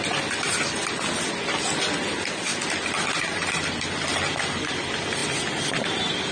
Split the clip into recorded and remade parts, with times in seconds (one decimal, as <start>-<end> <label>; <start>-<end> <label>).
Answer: 0.0-6.3 recorded